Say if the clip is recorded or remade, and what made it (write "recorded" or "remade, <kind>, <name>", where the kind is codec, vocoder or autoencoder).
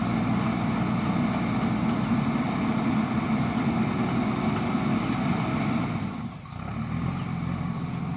recorded